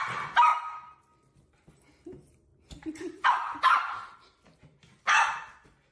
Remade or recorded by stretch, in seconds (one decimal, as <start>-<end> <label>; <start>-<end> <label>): 0.0-5.9 recorded